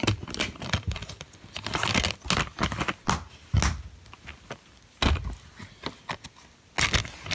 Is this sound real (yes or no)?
yes